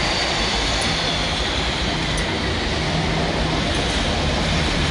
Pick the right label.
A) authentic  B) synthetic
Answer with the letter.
B